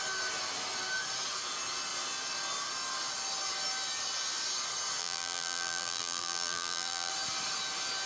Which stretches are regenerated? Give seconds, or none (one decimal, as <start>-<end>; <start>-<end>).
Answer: 5.0-7.1